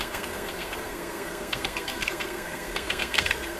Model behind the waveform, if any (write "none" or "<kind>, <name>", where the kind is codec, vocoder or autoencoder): codec, SNAC